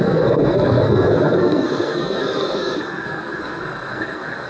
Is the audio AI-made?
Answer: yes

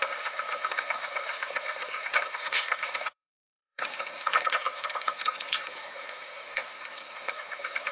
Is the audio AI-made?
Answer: yes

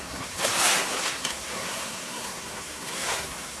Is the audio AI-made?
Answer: yes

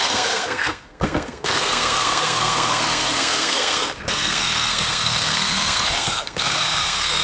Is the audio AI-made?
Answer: yes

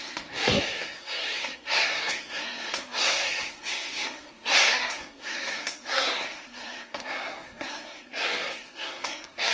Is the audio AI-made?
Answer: yes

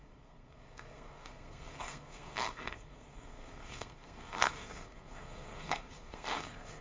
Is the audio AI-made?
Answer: yes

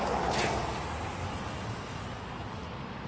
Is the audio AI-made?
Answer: no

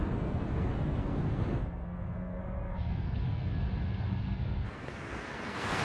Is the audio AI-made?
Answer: yes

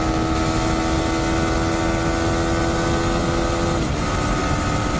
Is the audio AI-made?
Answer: no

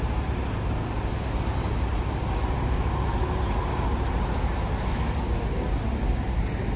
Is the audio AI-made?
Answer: no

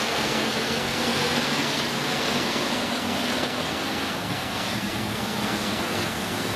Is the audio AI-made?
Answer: yes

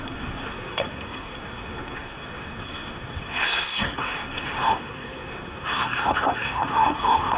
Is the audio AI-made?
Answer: yes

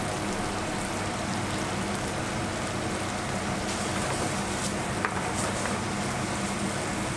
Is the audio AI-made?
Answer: no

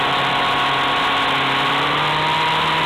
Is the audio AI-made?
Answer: no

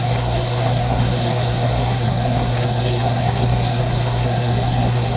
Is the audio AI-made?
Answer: yes